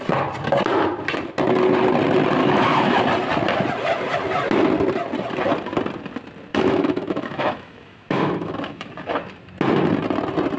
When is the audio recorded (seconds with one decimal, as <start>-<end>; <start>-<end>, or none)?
0.0-2.4; 3.0-6.5; 8.9-10.6